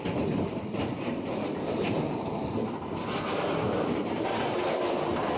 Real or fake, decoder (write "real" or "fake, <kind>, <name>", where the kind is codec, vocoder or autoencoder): fake, vocoder, BigVGAN v2